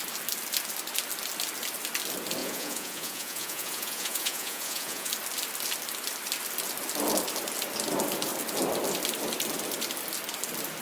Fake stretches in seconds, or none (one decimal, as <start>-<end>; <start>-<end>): 2.4-5.1